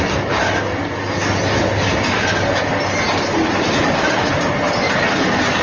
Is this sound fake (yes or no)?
no